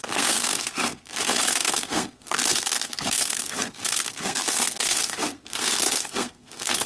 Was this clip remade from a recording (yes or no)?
yes